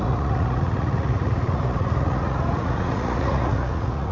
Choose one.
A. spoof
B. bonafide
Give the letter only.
A